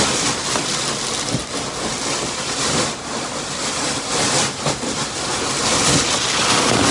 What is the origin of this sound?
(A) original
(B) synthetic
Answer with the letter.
A